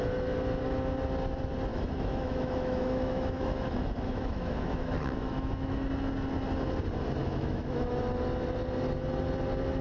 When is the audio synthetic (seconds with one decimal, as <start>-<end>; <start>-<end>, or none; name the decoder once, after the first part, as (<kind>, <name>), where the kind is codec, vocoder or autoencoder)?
1.7-5.9 (autoencoder, DAC-VAE); 7.2-8.0

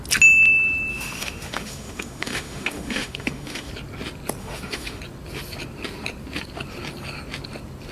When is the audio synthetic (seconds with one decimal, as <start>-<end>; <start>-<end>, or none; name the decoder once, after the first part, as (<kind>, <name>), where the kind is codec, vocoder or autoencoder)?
0.9-3.7 (autoencoder, DAC-VAE); 4.4-5.0

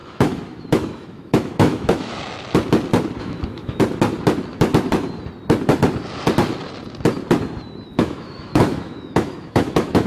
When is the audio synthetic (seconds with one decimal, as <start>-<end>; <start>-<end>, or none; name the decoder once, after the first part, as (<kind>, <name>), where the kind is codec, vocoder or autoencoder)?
0.0-2.2 (autoencoder, DAC-VAE); 3.2-3.8; 7.9-10.1

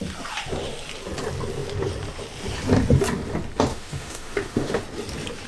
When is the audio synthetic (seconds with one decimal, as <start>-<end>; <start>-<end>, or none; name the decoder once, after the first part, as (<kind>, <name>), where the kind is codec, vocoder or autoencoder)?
3.7-4.8 (autoencoder, DAC-VAE)